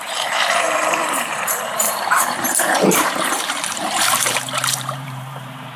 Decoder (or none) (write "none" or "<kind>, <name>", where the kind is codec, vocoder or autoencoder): vocoder, BigVGAN v2